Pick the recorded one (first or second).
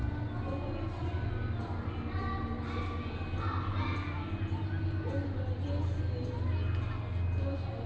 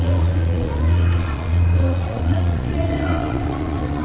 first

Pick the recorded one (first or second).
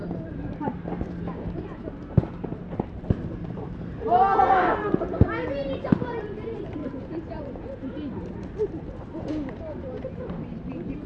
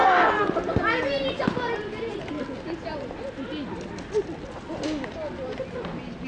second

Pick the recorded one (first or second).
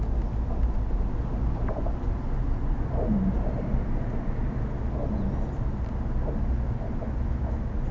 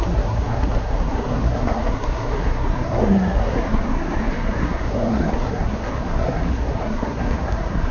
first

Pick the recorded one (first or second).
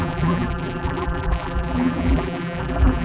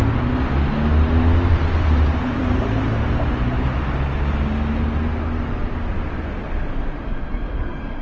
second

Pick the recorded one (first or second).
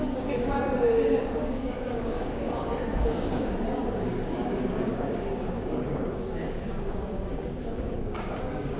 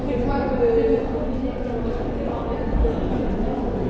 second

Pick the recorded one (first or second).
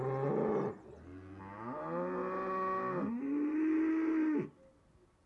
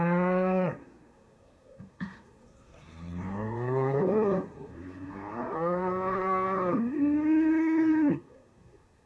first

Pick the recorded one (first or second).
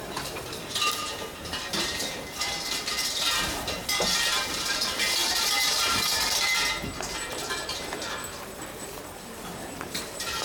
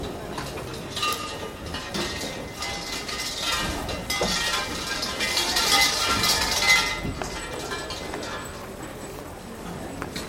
second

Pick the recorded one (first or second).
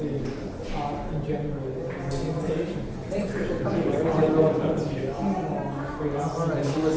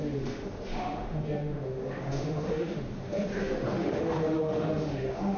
first